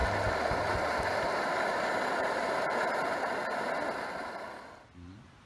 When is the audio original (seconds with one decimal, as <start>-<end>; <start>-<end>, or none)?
3.3-5.5

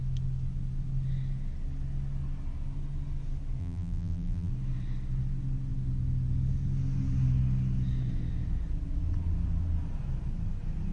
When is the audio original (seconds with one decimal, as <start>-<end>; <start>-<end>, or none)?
0.0-3.6; 4.5-10.9

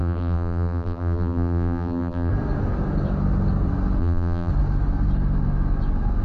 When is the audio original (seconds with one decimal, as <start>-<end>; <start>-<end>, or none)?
2.3-4.0; 4.5-6.2